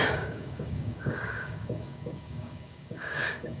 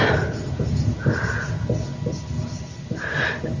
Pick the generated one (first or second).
first